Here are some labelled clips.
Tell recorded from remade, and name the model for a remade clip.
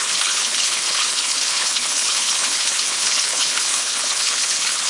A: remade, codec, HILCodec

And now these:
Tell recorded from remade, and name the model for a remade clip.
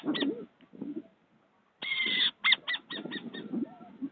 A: recorded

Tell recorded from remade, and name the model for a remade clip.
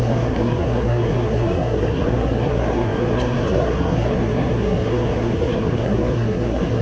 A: remade, codec, SNAC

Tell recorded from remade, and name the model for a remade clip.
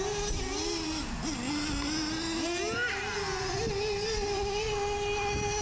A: recorded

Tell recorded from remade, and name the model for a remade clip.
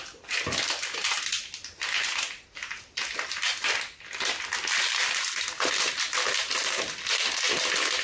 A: recorded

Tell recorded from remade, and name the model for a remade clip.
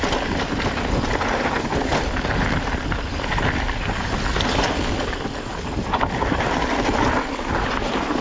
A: recorded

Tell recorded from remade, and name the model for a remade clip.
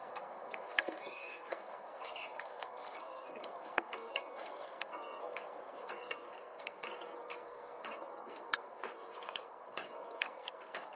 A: remade, codec, SNAC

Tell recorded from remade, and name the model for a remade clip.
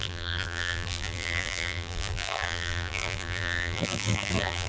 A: remade, vocoder, BigVGAN v2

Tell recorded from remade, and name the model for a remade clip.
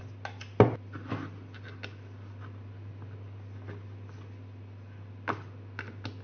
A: recorded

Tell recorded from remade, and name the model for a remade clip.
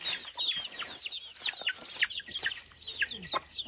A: recorded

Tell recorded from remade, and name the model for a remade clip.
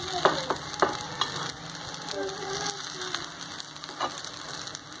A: recorded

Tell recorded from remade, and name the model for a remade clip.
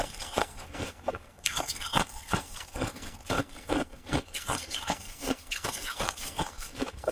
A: remade, codec, SNAC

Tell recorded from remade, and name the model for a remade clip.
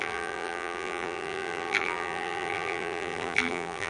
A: remade, vocoder, BigVGAN v2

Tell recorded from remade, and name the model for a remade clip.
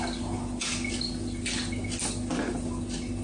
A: recorded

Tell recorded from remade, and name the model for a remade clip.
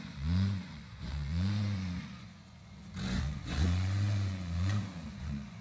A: remade, vocoder, Vocos